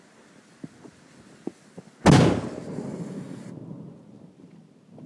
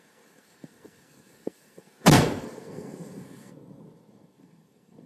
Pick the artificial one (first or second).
second